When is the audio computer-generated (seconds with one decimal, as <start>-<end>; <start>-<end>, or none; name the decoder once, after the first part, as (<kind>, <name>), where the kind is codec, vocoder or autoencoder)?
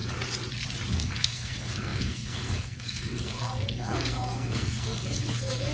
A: 0.9-5.7 (codec, SNAC)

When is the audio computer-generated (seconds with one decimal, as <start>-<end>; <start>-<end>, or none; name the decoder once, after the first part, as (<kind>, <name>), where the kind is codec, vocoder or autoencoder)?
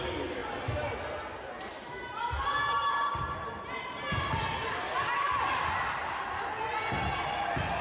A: none